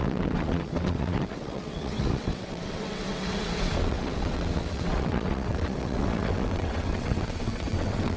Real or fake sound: fake